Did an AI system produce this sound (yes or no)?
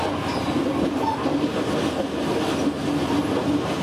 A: no